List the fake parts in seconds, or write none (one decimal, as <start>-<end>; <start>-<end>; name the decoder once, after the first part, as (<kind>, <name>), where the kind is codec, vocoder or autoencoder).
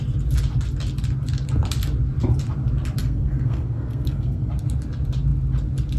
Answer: 3.0-4.5 (codec, SNAC)